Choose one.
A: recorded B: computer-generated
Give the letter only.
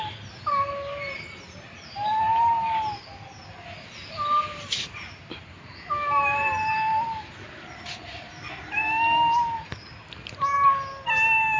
A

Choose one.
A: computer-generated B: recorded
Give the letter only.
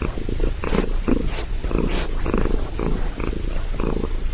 B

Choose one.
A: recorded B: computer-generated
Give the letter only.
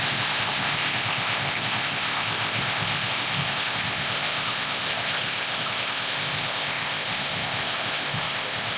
B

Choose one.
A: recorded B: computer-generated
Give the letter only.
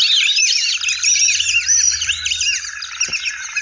B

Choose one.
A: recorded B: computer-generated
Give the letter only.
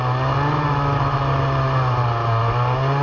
A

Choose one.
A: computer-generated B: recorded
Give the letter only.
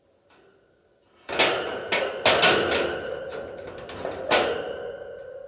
B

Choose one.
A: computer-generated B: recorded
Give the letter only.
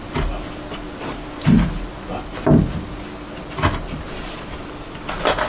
B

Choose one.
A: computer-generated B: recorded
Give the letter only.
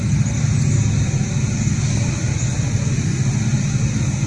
B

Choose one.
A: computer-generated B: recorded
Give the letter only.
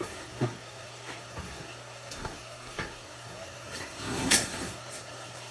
A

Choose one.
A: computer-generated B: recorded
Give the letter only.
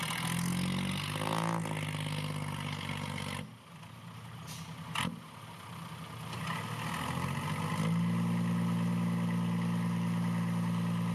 B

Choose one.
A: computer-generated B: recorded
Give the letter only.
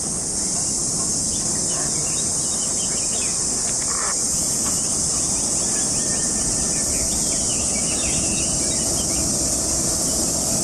B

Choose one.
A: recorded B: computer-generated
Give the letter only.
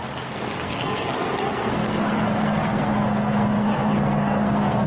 B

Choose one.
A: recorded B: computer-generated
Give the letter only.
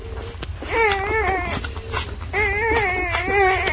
A